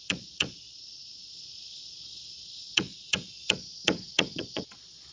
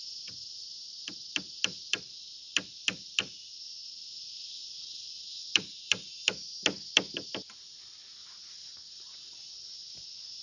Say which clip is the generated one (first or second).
first